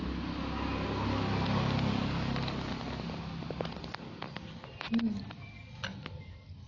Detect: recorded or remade recorded